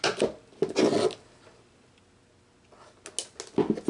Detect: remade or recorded recorded